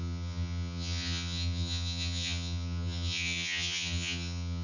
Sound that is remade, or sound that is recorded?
remade